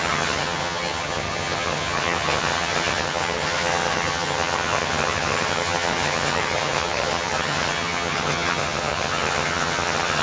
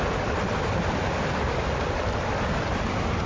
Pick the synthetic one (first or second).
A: first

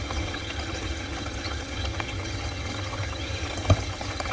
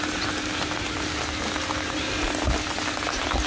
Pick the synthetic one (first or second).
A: first